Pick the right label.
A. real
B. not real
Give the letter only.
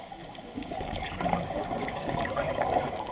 B